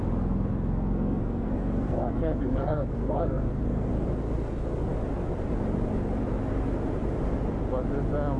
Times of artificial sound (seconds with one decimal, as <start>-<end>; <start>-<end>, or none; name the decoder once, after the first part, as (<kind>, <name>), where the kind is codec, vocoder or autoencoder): 0.5-3.9 (codec, SNAC)